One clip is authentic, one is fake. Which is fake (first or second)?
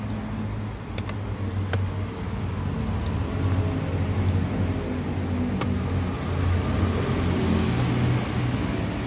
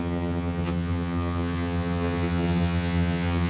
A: second